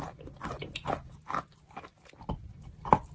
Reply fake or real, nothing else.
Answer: real